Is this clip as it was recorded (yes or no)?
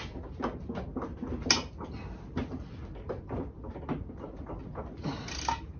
yes